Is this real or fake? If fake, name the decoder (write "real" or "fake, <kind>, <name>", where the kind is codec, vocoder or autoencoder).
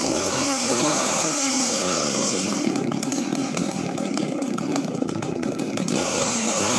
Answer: fake, codec, SNAC